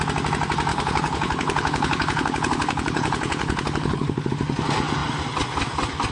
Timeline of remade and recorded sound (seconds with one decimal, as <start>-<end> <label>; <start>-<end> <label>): 0.0-0.7 recorded; 0.7-4.3 remade; 4.3-6.1 recorded